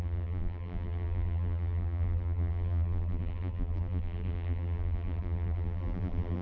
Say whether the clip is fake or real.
fake